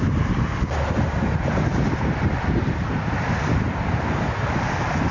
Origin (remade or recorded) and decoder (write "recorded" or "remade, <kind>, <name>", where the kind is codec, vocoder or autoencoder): recorded